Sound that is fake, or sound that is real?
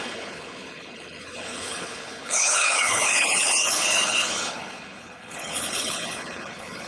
fake